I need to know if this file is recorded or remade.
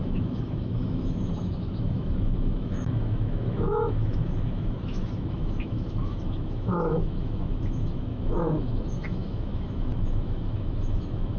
remade